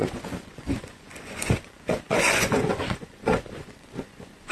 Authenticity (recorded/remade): remade